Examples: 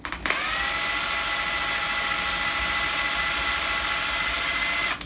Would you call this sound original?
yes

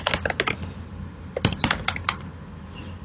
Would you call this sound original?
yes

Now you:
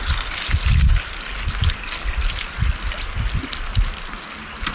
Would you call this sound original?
yes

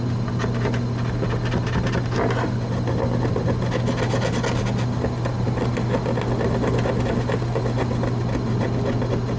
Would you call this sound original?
yes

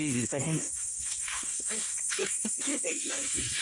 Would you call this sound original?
no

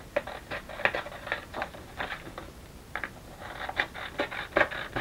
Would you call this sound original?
yes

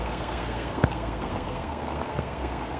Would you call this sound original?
no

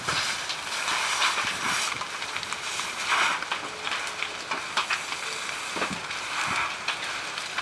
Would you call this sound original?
yes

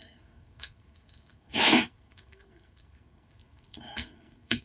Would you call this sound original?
no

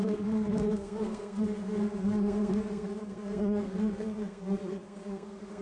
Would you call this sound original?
no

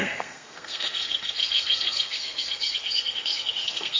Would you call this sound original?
no